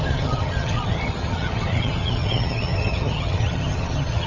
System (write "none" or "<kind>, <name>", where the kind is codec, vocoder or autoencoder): vocoder, HiFi-GAN